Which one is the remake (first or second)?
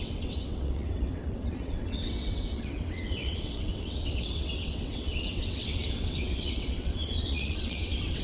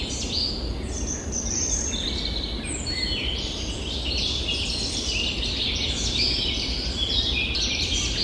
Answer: first